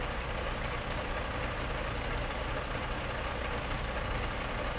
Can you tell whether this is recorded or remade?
recorded